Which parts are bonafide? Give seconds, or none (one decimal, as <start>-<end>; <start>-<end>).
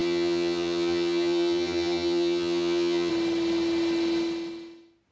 3.1-5.1